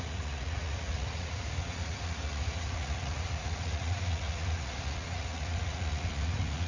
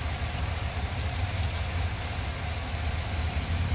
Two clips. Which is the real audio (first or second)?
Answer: second